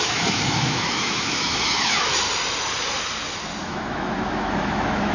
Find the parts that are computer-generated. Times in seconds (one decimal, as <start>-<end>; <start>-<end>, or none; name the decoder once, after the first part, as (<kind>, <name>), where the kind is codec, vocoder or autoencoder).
0.0-2.1 (autoencoder, DAC-VAE); 3.6-5.1